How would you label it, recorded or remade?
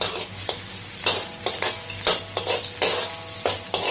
recorded